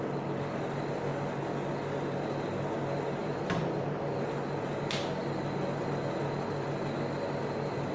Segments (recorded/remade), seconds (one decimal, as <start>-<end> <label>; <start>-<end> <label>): 0.0-3.2 recorded; 3.2-4.3 remade; 4.3-7.9 recorded